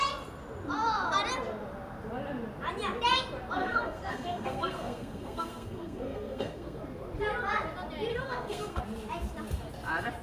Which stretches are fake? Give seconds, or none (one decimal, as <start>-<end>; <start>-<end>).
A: 3.6-6.8; 8.1-8.8